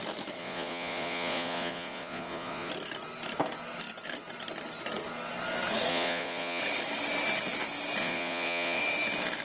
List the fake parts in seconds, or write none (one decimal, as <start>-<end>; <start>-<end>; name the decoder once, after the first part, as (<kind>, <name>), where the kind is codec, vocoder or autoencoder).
0.4-2.7 (vocoder, Vocos); 5.9-6.6; 8.0-8.8